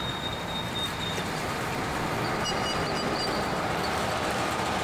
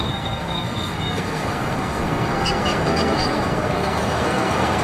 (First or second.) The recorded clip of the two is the first